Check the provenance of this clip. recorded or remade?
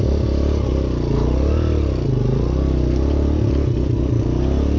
recorded